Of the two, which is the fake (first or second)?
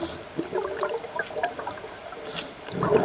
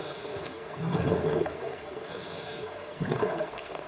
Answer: second